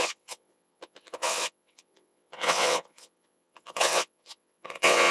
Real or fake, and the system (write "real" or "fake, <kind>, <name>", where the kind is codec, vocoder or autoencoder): fake, vocoder, WaveNeXt